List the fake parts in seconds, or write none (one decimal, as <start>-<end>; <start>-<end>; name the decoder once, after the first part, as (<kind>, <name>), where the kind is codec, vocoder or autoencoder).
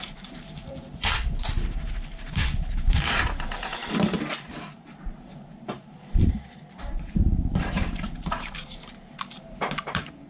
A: 0.0-3.8 (vocoder, BigVGAN v2); 4.4-10.3